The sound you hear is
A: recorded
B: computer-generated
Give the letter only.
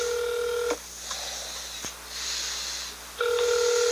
A